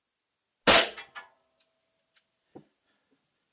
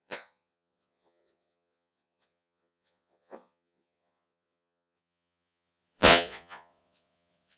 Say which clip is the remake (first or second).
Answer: second